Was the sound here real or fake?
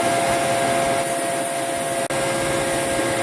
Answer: real